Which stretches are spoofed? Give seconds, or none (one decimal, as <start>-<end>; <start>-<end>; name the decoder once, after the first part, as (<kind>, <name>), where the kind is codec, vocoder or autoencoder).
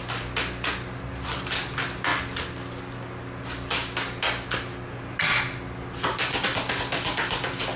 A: none